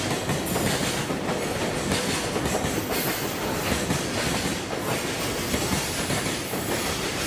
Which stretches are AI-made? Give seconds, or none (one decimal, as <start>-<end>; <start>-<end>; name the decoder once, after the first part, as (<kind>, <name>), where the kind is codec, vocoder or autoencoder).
none